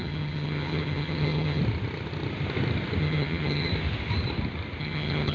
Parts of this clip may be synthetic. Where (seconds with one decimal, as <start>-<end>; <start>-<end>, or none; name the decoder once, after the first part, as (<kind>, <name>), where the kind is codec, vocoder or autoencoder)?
0.0-1.6 (vocoder, HiFi-GAN); 3.0-3.7; 4.8-5.3